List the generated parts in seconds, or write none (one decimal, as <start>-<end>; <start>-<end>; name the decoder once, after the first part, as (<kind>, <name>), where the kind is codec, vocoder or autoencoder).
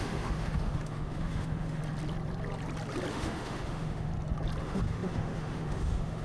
0.0-1.8 (autoencoder, DAC-VAE); 3.1-4.1; 4.6-6.2